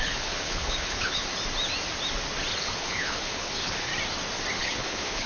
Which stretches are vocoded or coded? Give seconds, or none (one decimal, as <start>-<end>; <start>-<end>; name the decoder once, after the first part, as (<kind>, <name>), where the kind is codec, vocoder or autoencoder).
0.0-1.3 (codec, HILCodec); 2.6-3.9; 4.6-5.3